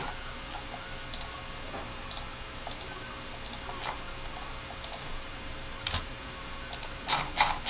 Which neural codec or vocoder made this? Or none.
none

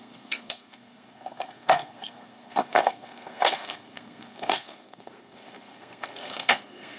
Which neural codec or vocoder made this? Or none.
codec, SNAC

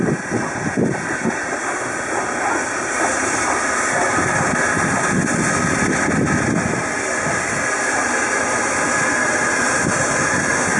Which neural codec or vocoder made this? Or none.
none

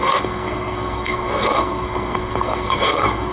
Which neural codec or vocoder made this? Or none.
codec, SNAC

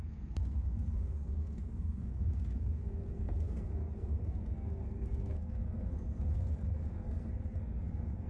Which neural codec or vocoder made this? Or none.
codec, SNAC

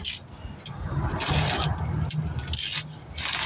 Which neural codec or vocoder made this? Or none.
none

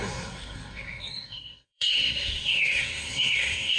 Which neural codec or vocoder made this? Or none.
codec, SNAC